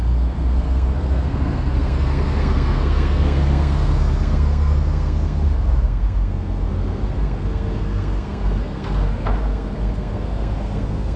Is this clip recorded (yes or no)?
no